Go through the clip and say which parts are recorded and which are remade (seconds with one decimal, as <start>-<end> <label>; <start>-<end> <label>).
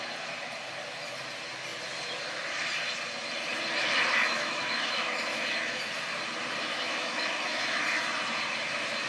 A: 0.0-4.2 recorded; 4.2-5.8 remade; 5.8-6.7 recorded; 6.7-7.8 remade; 7.8-9.1 recorded